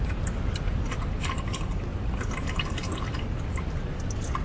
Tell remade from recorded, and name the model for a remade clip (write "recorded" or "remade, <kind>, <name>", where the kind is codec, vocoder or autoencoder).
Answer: recorded